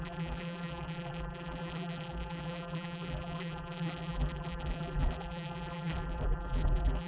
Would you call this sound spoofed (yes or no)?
yes